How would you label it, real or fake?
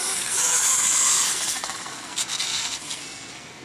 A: fake